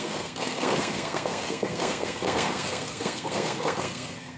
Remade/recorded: remade